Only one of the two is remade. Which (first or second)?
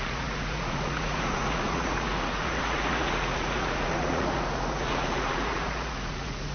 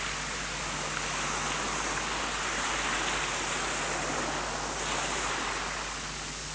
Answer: first